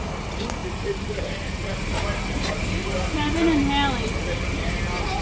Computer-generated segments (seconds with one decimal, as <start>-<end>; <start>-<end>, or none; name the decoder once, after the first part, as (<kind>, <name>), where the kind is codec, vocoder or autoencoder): 0.6-2.8 (vocoder, BigVGAN v2)